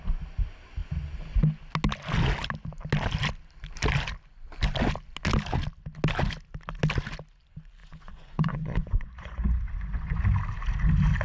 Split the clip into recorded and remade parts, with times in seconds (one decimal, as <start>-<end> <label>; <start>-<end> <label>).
0.0-7.8 recorded; 7.8-10.2 remade; 10.2-11.2 recorded